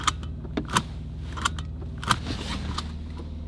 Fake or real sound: real